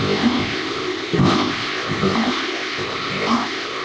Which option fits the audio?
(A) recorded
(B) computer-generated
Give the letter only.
B